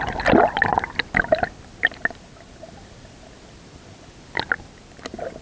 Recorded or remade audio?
recorded